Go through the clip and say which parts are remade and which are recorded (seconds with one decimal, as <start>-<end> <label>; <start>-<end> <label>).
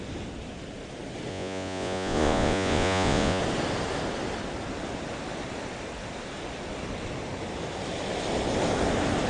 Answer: 0.0-1.3 recorded; 1.3-3.4 remade; 3.4-9.3 recorded